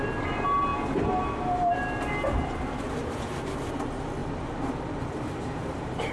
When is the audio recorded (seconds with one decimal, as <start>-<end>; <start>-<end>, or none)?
0.0-6.1